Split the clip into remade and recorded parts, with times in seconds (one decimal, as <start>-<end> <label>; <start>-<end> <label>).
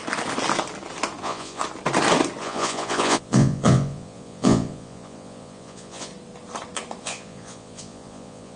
0.0-1.2 recorded; 1.2-1.6 remade; 1.6-2.4 recorded; 2.4-6.1 remade; 6.1-7.0 recorded; 7.0-8.6 remade